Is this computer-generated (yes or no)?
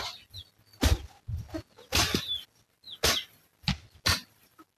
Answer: no